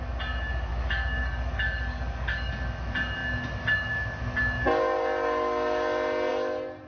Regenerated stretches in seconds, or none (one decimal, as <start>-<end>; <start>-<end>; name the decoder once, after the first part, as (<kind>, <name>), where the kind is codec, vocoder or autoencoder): 0.7-2.5 (codec, DAC)